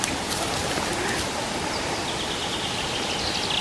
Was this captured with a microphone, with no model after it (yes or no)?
yes